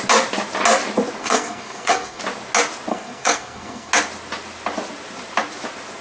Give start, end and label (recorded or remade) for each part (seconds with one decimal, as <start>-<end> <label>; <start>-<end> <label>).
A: 0.0-1.2 recorded; 1.2-2.2 remade; 2.2-2.9 recorded; 2.9-3.9 remade; 3.9-6.0 recorded